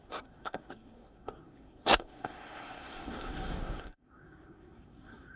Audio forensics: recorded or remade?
remade